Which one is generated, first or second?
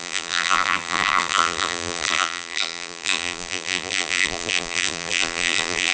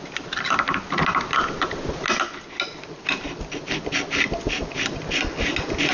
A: first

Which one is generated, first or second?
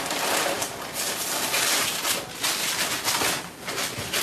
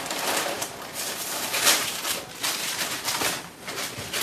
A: second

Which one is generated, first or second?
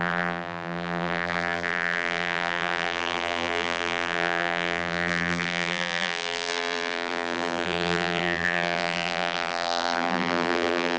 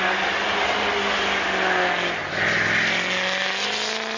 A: first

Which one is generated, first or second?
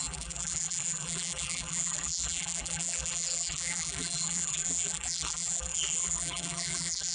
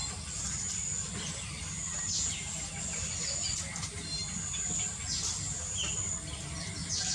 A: first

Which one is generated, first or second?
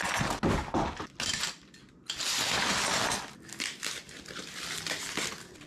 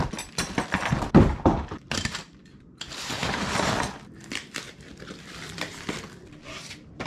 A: second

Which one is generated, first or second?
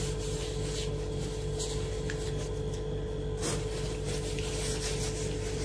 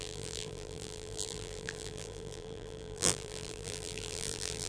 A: second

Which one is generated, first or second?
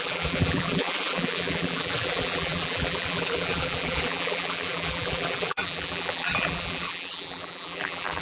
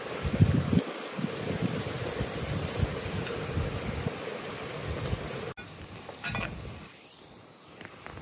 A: first